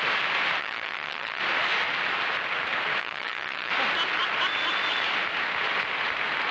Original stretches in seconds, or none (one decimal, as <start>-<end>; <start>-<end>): 0.0-0.6; 1.4-3.0; 3.7-6.5